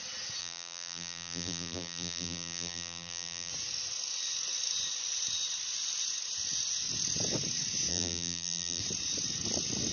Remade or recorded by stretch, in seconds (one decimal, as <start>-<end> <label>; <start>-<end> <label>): 0.0-0.4 recorded; 0.4-3.5 remade; 3.5-7.9 recorded; 7.9-8.8 remade; 8.8-9.9 recorded